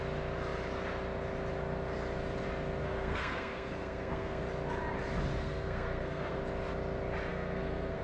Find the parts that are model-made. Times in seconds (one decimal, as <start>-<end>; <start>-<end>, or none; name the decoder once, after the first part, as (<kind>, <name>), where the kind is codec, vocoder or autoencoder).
2.8-4.4 (codec, SNAC); 5.4-6.4; 7.3-8.0